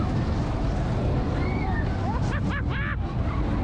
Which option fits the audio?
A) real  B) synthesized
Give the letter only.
A